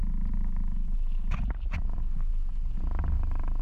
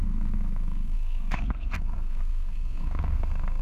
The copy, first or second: second